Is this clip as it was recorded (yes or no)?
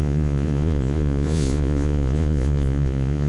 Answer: no